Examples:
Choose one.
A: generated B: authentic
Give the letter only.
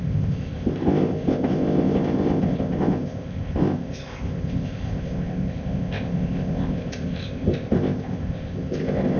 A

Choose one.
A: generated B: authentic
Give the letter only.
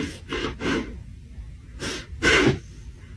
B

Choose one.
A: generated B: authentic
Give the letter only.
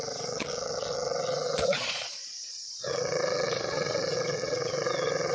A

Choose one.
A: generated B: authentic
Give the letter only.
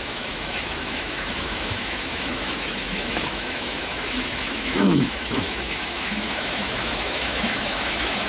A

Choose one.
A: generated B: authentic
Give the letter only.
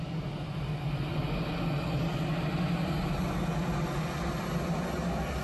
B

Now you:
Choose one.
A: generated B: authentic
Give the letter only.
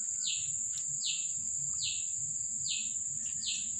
B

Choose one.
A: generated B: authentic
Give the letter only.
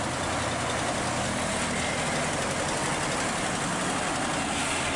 B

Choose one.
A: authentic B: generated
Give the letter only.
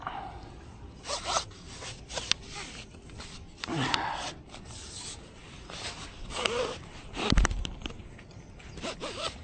A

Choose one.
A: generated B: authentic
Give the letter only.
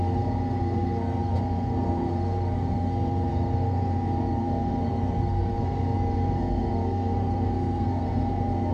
A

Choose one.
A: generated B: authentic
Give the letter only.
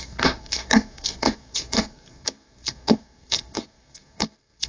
A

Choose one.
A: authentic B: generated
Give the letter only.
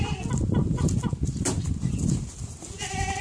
A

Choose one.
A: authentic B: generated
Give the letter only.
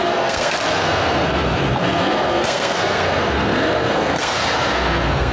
B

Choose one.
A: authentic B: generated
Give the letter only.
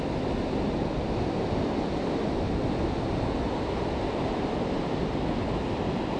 A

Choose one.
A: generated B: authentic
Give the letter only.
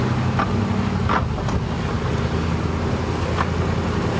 B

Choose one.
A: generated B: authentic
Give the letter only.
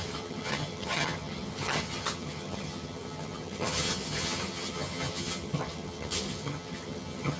A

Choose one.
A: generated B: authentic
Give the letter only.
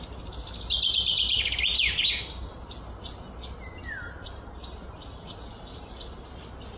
B